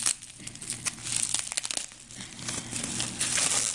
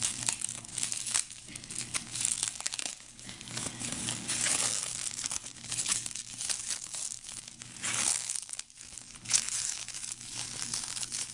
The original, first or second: first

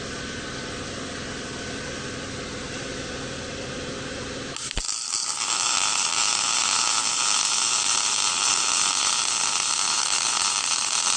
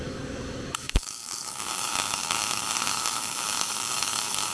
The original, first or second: first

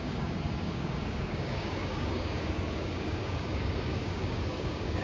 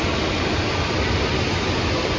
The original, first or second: second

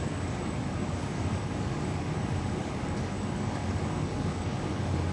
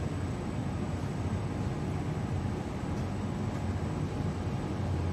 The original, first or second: second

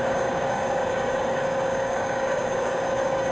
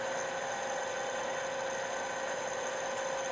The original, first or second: second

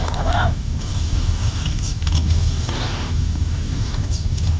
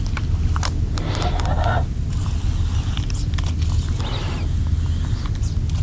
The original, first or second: second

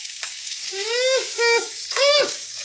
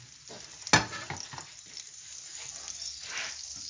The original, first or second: second